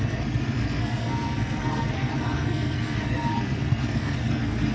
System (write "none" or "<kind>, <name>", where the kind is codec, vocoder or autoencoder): codec, SNAC